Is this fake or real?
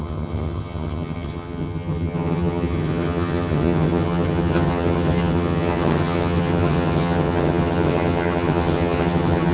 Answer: fake